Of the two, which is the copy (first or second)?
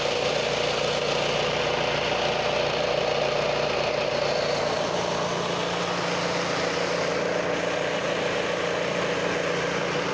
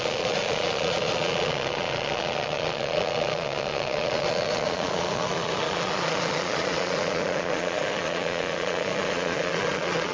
second